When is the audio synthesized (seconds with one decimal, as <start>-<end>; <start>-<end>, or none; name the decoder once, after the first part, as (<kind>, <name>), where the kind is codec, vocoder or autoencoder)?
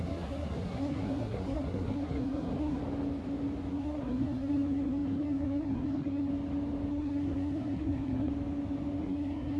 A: 0.0-2.8 (codec, SNAC); 3.7-6.3; 6.9-8.3; 9.0-9.6